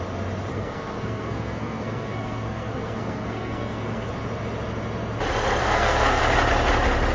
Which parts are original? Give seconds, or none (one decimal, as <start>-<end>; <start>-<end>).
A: 0.0-0.5; 4.1-5.6; 6.2-7.1

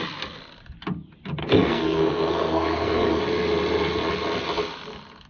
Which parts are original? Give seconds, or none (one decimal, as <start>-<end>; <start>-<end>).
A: 0.0-1.4; 3.2-5.3

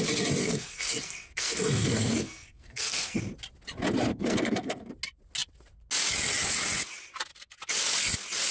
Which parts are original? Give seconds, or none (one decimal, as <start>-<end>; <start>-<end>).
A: 0.0-0.4; 3.2-4.1; 4.9-8.5